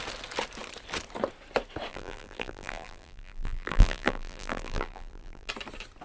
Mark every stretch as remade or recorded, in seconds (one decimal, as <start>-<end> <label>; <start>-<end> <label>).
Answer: 0.0-1.9 recorded; 1.9-5.5 remade; 5.5-6.0 recorded